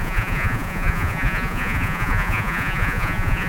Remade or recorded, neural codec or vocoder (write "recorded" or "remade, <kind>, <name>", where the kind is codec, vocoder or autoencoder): remade, vocoder, Vocos